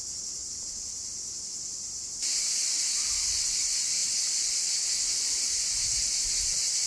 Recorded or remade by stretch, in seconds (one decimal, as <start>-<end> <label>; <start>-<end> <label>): 0.0-6.9 recorded